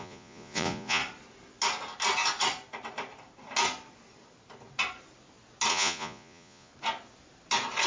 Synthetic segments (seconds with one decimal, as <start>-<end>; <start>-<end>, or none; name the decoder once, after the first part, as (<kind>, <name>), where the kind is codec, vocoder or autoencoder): 0.0-1.0 (vocoder, Vocos); 5.7-6.7